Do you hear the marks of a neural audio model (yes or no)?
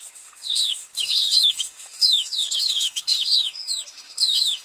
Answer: yes